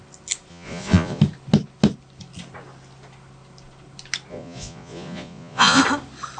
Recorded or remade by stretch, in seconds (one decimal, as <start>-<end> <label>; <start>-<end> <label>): 0.0-0.5 recorded; 0.5-1.2 remade; 1.2-4.3 recorded; 4.3-5.8 remade; 5.8-6.4 recorded